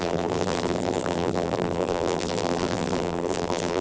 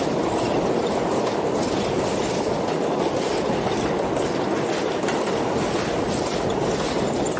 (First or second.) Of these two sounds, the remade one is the first